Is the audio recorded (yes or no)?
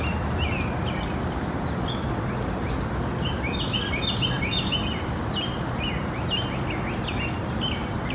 yes